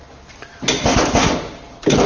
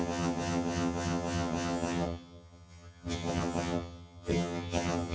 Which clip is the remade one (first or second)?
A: second